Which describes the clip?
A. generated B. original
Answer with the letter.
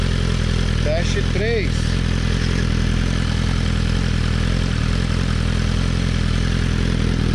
B